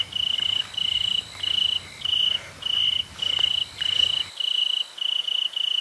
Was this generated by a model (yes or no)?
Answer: no